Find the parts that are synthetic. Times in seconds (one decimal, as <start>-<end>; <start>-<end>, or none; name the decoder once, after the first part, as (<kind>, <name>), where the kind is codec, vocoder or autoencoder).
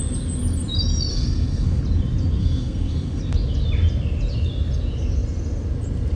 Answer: 1.1-1.8 (codec, SNAC); 2.4-3.2